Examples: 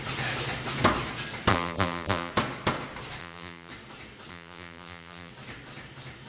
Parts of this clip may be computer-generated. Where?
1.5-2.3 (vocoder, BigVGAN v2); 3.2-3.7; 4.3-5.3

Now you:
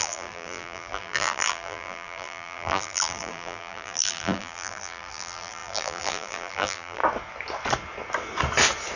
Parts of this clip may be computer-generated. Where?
0.0-7.0 (vocoder, BigVGAN v2)

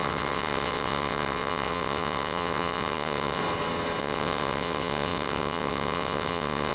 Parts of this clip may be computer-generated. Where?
0.0-3.4 (vocoder, WaveNeXt); 4.0-6.7

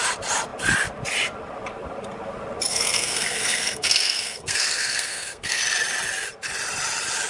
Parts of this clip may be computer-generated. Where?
2.7-5.6 (codec, SNAC)

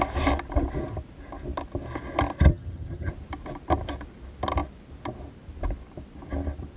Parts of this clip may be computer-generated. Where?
2.5-3.1 (vocoder, HiFi-GAN)

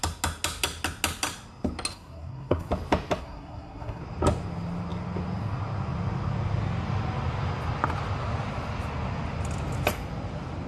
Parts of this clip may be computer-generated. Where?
1.9-2.7 (codec, SNAC); 3.2-4.0

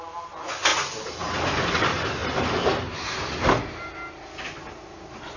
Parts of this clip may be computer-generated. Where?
none

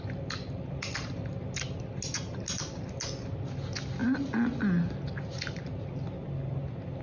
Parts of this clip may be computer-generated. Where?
none